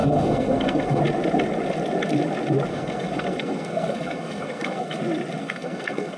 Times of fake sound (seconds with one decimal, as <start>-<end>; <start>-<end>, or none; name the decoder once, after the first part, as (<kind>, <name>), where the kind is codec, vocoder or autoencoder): 0.0-1.0 (codec, SNAC); 2.7-5.0; 5.4-6.2